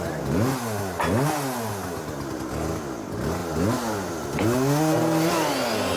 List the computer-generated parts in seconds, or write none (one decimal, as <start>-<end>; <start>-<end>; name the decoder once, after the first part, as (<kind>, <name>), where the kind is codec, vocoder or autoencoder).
none

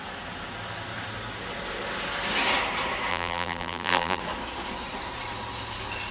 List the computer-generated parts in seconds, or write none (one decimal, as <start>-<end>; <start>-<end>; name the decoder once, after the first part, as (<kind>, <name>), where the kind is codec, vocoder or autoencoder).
3.1-4.2 (vocoder, BigVGAN v2)

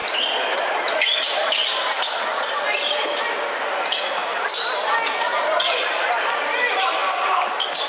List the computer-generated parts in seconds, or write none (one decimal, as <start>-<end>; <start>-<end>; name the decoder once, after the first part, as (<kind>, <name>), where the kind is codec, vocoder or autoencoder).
0.0-0.7 (vocoder, BigVGAN v2); 1.4-2.5

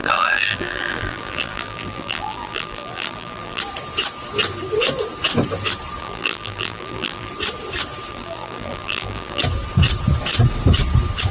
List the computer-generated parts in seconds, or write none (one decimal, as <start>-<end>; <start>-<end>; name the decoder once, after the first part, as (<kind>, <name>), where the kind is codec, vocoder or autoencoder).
0.0-3.6 (vocoder, BigVGAN v2); 6.0-7.3; 8.1-9.4